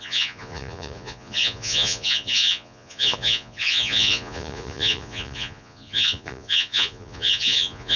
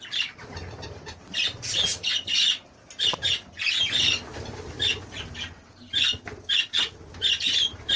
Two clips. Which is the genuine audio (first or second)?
second